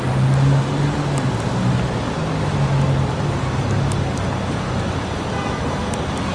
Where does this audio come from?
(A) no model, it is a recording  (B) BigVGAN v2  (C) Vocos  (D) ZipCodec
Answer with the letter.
A